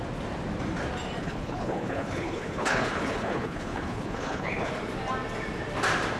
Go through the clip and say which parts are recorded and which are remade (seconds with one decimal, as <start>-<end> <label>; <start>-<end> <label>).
0.0-1.2 recorded; 1.2-4.7 remade; 4.7-6.2 recorded